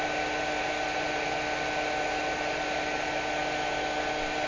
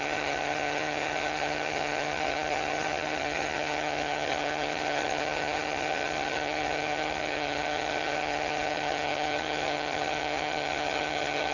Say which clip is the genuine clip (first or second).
first